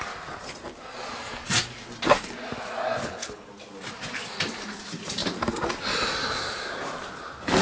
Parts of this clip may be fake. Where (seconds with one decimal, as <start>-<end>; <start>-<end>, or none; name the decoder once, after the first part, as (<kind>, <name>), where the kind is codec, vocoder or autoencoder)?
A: 3.0-3.5 (codec, HILCodec)